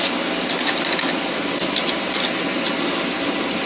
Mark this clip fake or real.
real